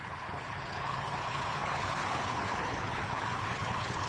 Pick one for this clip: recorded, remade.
remade